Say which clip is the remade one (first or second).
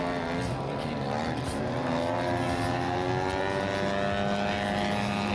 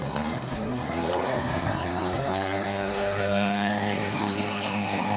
second